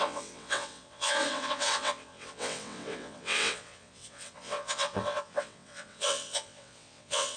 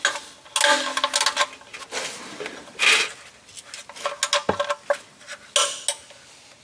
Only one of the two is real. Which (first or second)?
second